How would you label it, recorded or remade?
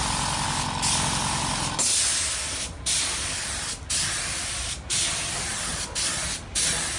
recorded